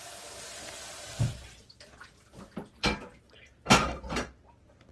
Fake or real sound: real